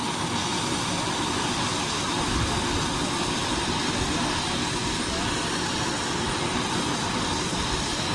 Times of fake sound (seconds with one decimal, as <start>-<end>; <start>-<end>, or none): none